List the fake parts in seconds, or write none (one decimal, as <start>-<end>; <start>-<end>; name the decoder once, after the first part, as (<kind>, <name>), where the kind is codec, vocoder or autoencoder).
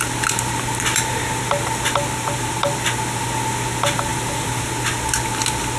0.9-1.4 (vocoder, BigVGAN v2); 4.1-4.7